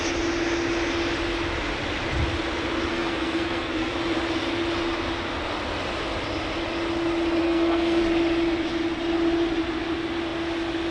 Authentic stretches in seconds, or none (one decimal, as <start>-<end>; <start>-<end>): 0.0-2.9; 3.9-7.4; 8.0-10.9